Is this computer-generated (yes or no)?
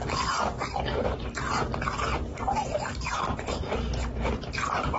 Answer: no